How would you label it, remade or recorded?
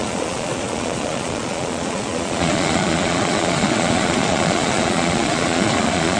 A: remade